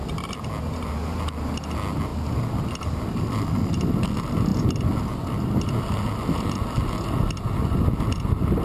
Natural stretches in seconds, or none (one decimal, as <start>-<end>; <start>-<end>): 0.0-8.6